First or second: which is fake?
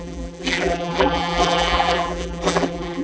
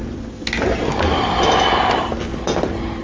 first